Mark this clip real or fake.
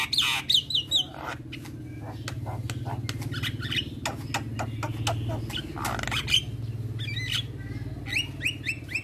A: real